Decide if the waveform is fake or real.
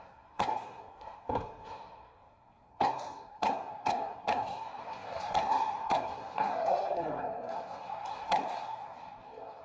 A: fake